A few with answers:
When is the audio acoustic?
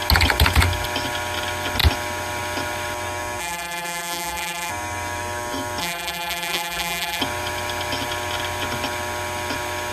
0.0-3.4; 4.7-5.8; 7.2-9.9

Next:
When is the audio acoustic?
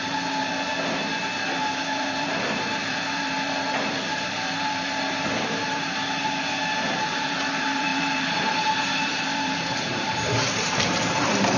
0.7-1.6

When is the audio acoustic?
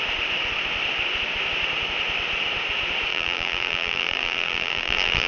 0.0-3.1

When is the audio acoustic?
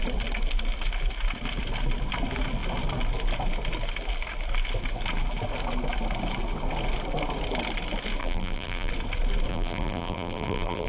0.0-8.2; 8.9-9.5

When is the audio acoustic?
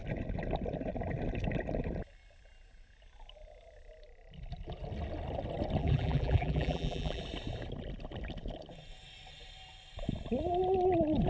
0.0-5.8; 7.2-11.3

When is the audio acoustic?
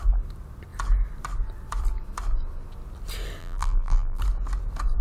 0.0-3.4; 4.2-5.0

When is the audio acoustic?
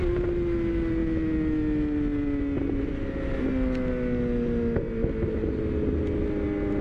0.0-6.8